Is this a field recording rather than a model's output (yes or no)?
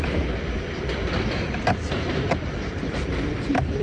no